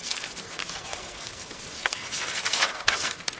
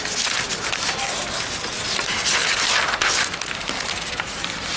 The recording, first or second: second